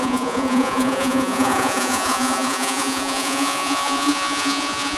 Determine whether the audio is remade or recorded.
remade